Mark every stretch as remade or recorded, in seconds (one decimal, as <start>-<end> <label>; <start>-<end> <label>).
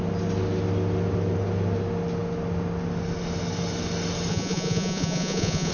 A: 0.0-4.3 recorded; 4.3-5.7 remade